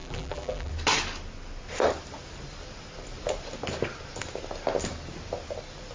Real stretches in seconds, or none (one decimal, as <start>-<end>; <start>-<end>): 0.7-5.9